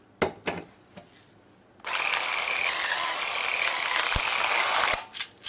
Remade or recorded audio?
recorded